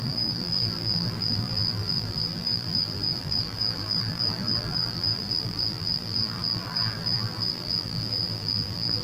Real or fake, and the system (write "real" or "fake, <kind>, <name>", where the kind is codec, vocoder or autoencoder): fake, vocoder, BigVGAN v2